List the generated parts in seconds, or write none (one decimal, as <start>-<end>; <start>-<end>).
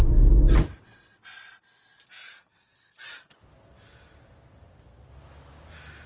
none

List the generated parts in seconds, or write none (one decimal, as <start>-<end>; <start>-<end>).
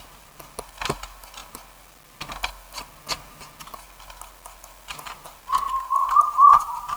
none